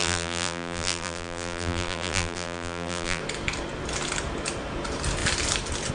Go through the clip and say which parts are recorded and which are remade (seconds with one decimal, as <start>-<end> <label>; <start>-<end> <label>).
0.0-3.2 remade; 3.2-5.9 recorded

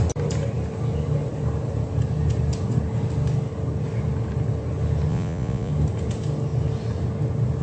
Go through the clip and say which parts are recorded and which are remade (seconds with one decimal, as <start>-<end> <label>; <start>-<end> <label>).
0.0-5.1 recorded; 5.1-5.7 remade; 5.7-7.6 recorded